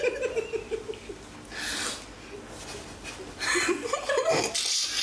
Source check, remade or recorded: recorded